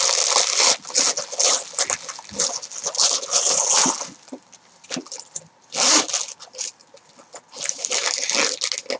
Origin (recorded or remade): recorded